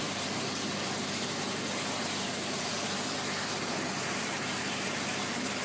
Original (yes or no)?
no